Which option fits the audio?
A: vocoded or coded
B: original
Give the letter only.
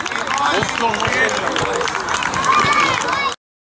B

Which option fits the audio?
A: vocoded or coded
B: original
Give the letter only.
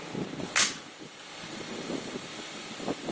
B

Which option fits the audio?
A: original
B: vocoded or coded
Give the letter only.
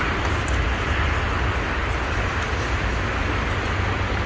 A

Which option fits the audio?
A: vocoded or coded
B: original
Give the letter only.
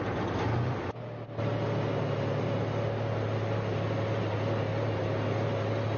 B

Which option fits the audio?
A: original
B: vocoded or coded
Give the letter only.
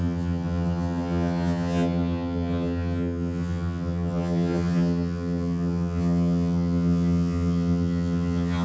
B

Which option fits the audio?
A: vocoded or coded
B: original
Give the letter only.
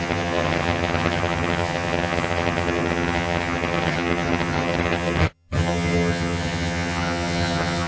A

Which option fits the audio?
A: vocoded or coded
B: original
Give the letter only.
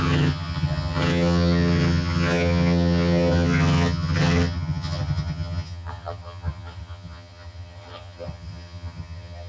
A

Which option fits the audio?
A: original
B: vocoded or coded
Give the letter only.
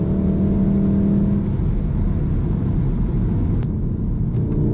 A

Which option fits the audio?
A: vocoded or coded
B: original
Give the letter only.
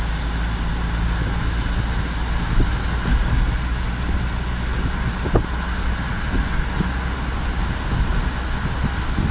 B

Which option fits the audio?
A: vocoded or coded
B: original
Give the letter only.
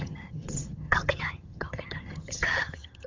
A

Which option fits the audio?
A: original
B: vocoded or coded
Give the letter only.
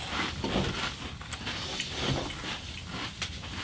A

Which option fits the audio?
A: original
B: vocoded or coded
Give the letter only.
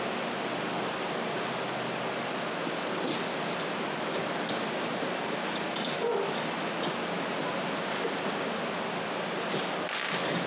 A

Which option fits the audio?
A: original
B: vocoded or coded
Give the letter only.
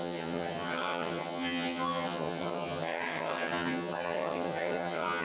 B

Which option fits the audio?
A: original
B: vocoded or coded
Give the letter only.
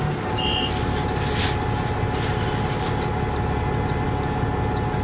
A